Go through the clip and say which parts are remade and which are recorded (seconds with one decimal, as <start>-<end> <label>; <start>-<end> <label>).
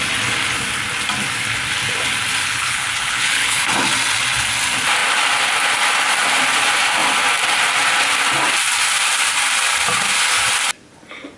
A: 0.0-2.4 recorded; 2.4-3.6 remade; 3.6-11.4 recorded